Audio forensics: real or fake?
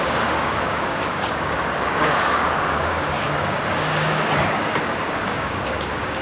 fake